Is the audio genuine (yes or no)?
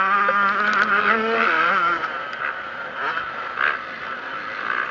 yes